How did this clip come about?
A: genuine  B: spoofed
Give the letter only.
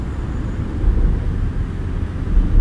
A